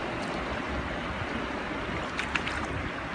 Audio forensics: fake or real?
real